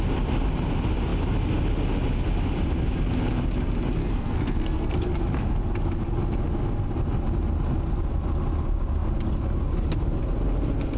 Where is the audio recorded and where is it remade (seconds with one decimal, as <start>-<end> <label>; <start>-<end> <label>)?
0.0-4.0 recorded; 4.0-5.1 remade; 5.1-11.0 recorded